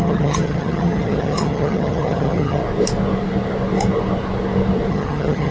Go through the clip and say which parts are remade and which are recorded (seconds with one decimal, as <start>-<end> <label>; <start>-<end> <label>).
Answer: 0.0-2.6 remade; 2.6-4.9 recorded; 4.9-5.5 remade